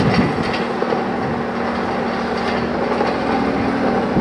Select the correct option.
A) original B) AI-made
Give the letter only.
A